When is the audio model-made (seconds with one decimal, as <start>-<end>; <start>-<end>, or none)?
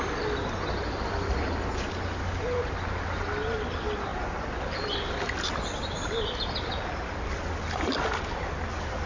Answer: none